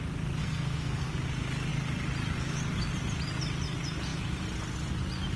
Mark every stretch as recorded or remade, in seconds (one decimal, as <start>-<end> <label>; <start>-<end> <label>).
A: 0.0-0.4 recorded; 0.4-1.1 remade; 1.1-5.4 recorded